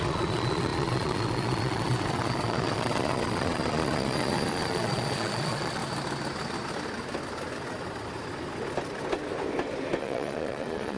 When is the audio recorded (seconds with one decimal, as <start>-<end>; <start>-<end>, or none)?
5.8-10.0